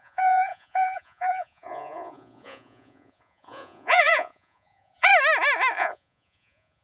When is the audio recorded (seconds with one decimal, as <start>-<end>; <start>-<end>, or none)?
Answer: 5.1-5.8